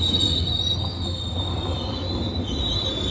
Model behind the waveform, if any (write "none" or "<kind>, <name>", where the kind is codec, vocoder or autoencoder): vocoder, BigVGAN v2